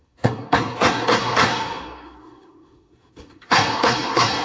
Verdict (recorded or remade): remade